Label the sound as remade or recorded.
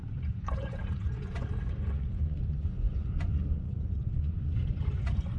remade